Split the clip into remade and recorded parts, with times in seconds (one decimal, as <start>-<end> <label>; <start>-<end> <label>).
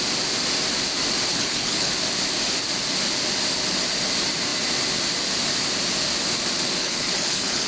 0.0-1.3 recorded; 1.3-1.9 remade; 1.9-6.8 recorded; 6.8-7.7 remade